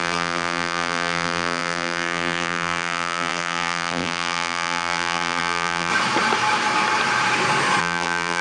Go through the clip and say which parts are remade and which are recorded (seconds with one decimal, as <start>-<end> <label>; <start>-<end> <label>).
0.0-5.9 remade; 5.9-7.8 recorded; 7.8-8.4 remade